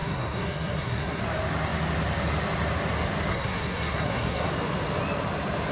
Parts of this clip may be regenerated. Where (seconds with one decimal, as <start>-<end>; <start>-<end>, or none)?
0.0-1.2; 3.3-4.5